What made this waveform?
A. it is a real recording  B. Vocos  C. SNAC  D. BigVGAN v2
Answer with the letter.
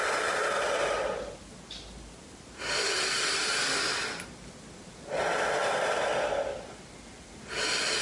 A